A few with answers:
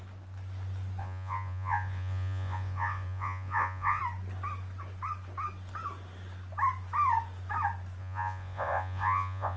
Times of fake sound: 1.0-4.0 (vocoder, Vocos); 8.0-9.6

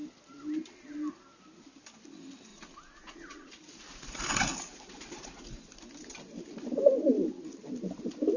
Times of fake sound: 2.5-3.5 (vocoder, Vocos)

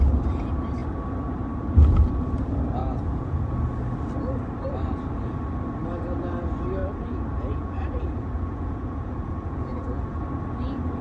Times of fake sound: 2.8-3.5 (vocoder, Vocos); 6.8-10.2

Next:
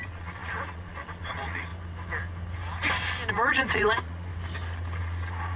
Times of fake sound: 0.0-1.7 (vocoder, Vocos); 3.3-4.3; 5.0-5.6